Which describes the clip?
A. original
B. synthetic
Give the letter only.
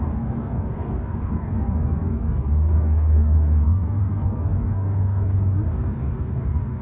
B